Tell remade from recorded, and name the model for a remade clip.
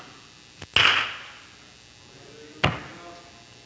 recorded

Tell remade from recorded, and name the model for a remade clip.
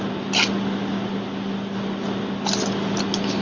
recorded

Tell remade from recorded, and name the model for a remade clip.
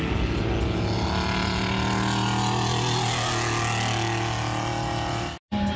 recorded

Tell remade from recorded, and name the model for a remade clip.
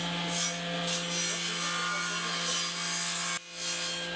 recorded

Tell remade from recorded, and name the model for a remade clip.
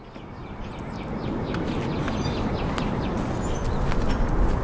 recorded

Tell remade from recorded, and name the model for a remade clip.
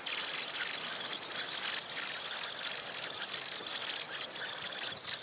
recorded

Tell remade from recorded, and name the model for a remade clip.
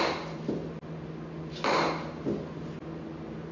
recorded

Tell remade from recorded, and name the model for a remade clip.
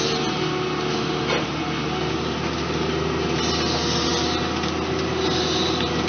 recorded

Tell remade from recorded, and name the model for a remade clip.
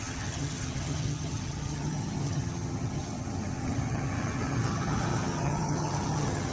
remade, vocoder, HiFi-GAN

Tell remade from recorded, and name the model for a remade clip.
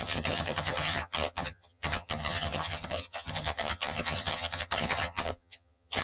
remade, vocoder, HiFi-GAN